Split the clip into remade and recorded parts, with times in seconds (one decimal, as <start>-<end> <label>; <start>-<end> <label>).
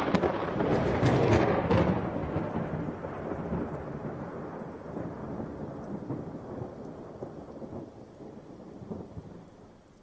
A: 0.0-10.0 recorded